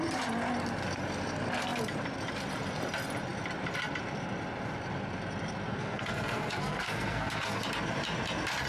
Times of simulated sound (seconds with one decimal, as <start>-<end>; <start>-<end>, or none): 5.7-7.6